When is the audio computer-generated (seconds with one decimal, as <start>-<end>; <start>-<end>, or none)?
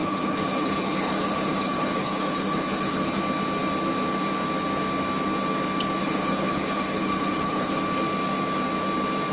0.0-3.2; 6.0-7.8